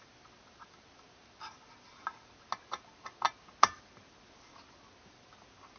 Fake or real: real